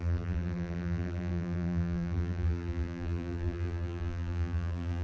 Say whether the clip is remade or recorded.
remade